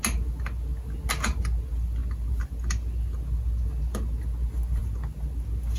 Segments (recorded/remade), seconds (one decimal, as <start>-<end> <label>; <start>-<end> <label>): 0.0-5.8 recorded